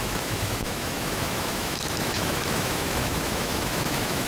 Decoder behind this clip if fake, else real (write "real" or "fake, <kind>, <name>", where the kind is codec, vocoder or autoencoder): fake, autoencoder, DAC-VAE